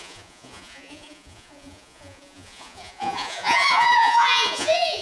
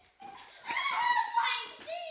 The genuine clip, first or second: second